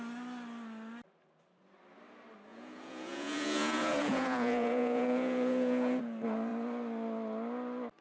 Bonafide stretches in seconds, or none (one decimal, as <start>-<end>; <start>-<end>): 0.0-2.5; 6.0-8.0